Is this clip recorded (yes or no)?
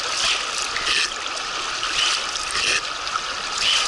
yes